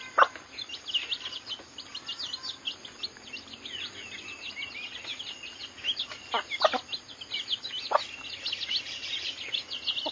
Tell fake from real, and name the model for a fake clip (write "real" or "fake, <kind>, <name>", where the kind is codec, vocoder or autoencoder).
real